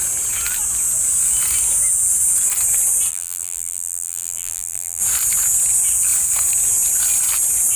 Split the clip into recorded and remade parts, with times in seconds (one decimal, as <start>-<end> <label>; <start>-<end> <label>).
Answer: 0.0-3.1 recorded; 3.1-5.0 remade; 5.0-7.8 recorded